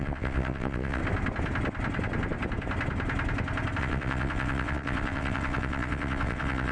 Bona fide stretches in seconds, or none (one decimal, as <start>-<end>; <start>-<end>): 1.0-3.8